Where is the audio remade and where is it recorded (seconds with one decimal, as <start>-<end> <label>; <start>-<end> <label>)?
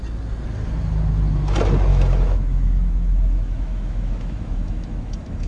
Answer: 0.0-1.9 recorded; 1.9-5.5 remade